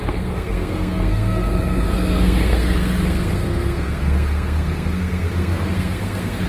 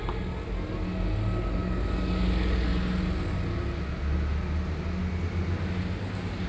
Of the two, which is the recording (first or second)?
second